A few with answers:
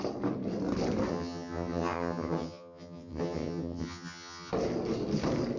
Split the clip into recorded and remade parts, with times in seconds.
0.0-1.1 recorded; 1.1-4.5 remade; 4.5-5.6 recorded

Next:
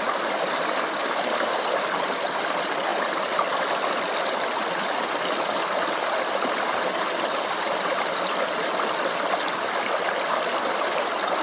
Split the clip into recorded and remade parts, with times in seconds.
0.0-11.4 recorded

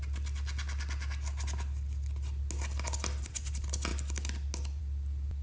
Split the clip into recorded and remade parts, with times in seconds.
0.0-5.4 recorded

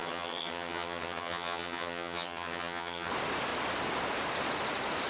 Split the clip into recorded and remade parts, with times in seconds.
0.0-3.1 remade; 3.1-5.1 recorded

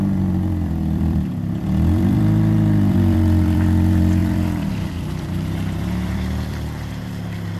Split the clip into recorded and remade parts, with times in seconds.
0.0-7.6 remade